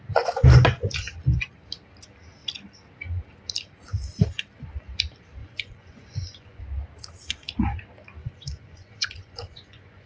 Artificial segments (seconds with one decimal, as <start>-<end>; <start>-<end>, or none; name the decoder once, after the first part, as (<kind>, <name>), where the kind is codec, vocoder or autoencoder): 5.4-6.6 (vocoder, Vocos); 8.2-10.1